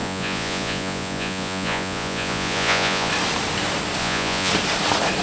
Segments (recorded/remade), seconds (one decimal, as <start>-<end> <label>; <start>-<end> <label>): 0.0-3.1 remade; 3.1-4.0 recorded; 4.0-4.5 remade; 4.5-5.2 recorded